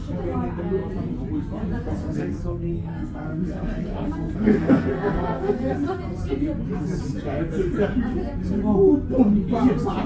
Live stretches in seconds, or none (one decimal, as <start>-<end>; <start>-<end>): 0.0-2.0; 6.0-10.1